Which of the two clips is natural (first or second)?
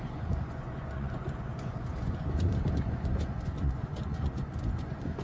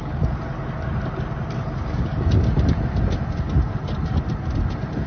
second